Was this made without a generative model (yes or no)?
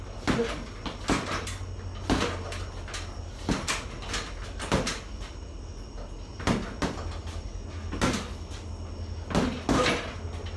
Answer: yes